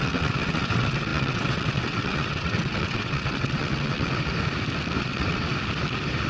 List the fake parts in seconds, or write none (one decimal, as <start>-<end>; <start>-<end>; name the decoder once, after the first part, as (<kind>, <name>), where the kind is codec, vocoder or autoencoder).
0.0-4.3 (vocoder, WaveNeXt); 5.0-5.5